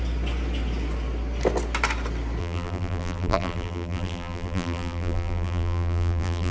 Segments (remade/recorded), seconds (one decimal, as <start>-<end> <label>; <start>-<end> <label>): 0.0-2.4 recorded; 2.4-6.5 remade